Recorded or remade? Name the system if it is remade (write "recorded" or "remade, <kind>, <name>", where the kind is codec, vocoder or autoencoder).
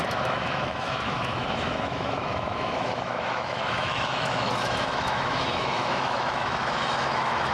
remade, autoencoder, DAC-VAE